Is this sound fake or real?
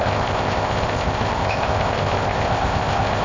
fake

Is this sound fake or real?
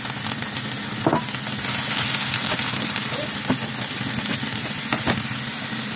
real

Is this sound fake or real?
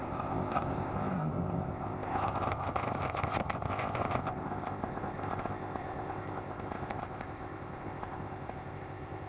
fake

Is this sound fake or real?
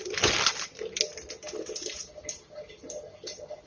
real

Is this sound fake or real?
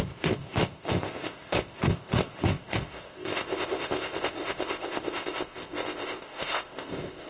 fake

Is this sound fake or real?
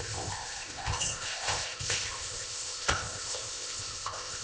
fake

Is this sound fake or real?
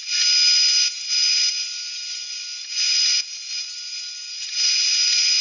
real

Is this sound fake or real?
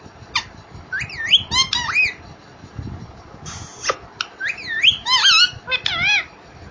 real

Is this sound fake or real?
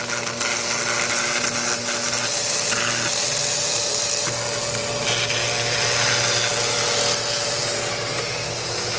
real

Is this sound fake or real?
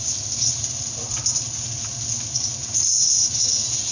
real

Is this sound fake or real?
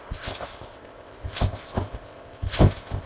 fake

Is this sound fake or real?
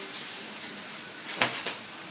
real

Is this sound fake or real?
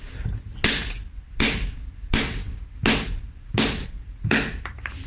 real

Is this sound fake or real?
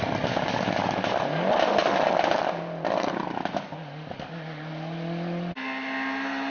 real